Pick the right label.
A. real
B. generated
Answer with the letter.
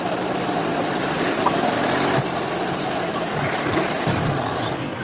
A